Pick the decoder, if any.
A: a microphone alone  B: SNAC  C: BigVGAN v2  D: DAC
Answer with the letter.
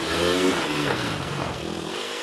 B